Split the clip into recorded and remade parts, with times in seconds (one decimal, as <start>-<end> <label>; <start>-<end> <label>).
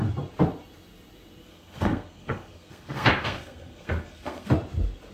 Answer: 0.0-1.4 recorded; 1.4-4.5 remade; 4.5-5.1 recorded